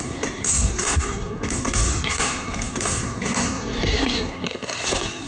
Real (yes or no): no